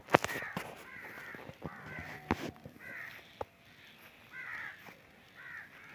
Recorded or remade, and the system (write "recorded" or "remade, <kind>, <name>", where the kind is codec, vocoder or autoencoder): recorded